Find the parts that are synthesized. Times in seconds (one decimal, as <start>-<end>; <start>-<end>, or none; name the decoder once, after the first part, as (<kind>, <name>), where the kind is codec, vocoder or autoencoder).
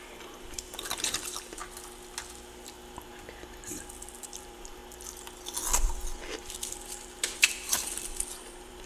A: 0.0-1.6 (vocoder, BigVGAN v2); 4.2-4.8; 6.4-8.9